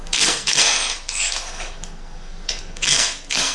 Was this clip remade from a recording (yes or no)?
yes